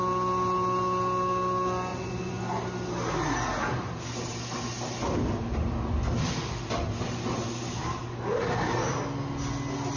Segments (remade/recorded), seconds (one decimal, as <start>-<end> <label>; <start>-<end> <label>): 0.0-1.9 recorded; 1.9-2.6 remade; 2.6-10.0 recorded